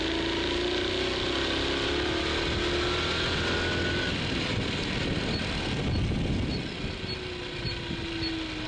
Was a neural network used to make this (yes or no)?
no